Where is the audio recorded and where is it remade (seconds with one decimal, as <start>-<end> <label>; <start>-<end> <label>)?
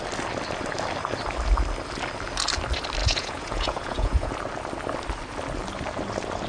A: 0.0-3.0 recorded; 3.0-4.3 remade; 4.3-6.5 recorded